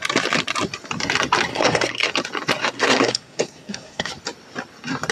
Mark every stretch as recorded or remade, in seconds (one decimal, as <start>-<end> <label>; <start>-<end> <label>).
0.0-1.5 recorded; 1.5-2.1 remade; 2.1-2.6 recorded; 2.6-4.1 remade; 4.1-5.1 recorded